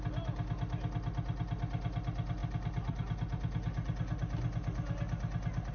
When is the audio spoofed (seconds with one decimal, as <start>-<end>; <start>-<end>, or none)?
none